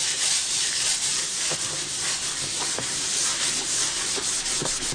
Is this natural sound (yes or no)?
no